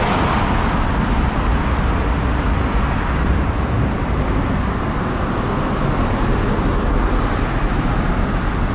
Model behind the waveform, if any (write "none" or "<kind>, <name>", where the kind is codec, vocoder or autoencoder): none